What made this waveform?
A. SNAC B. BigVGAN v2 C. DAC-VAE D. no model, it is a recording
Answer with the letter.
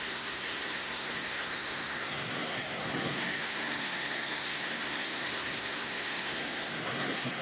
A